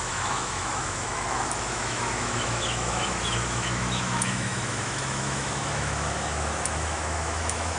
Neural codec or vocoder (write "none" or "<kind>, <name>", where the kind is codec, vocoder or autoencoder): autoencoder, DAC-VAE